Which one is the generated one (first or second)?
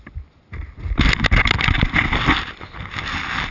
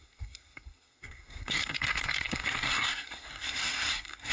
second